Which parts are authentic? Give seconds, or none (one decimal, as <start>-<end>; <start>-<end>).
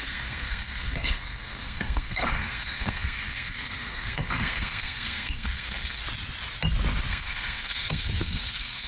6.0-7.1